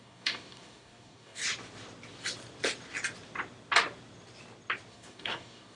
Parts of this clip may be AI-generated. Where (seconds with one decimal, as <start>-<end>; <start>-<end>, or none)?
0.0-1.4; 4.9-5.8